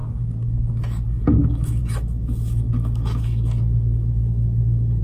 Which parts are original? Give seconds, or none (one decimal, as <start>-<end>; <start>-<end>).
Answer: none